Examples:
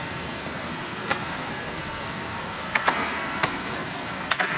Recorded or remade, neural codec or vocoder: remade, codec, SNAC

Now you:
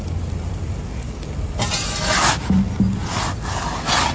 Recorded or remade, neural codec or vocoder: recorded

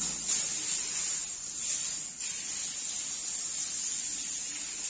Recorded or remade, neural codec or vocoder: recorded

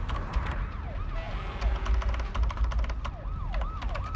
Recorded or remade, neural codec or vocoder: recorded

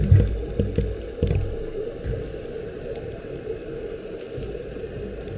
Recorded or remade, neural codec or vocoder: recorded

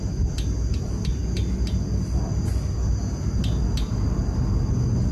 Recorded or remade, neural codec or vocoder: recorded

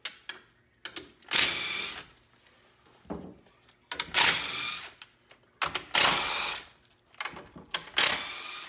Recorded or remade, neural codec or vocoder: recorded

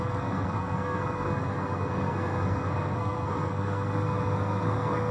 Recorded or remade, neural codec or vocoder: remade, codec, SNAC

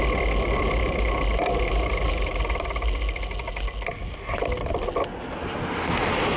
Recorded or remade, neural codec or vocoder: recorded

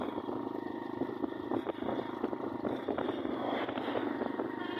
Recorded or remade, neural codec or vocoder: recorded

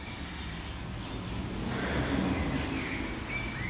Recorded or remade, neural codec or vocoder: recorded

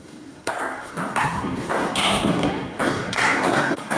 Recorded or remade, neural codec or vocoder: remade, codec, SNAC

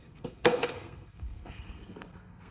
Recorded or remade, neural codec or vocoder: remade, codec, SNAC